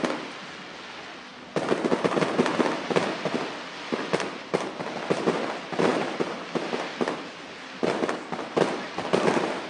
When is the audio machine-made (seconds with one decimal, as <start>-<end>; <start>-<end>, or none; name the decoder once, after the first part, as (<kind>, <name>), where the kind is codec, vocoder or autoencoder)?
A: none